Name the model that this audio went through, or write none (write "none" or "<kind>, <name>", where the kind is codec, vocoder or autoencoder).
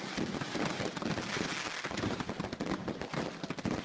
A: none